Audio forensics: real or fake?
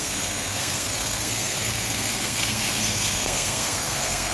fake